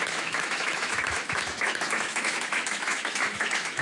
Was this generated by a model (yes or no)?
yes